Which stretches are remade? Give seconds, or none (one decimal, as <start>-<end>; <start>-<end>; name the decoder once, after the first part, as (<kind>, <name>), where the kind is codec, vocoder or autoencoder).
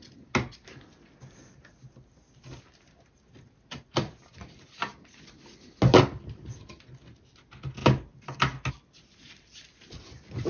none